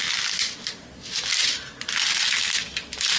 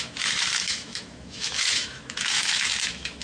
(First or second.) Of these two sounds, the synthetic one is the second